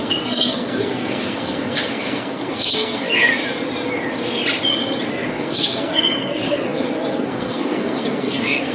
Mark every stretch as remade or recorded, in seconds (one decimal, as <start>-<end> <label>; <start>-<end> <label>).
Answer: 0.0-3.3 remade; 3.3-5.1 recorded; 5.1-8.7 remade